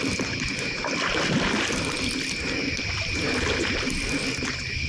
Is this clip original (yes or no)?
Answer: yes